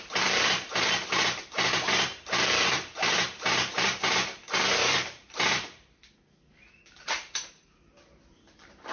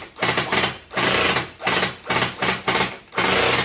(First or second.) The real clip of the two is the second